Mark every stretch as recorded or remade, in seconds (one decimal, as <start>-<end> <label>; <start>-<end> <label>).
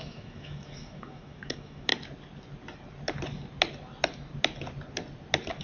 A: 0.0-1.9 remade; 1.9-5.6 recorded